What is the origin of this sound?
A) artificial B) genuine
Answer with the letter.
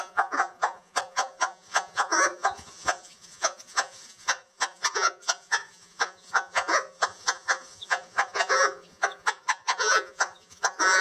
A